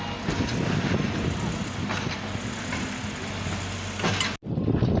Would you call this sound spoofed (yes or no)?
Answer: no